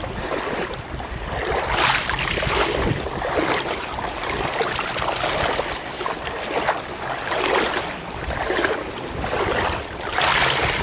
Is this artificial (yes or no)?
no